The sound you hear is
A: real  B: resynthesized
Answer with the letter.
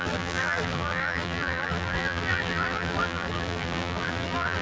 B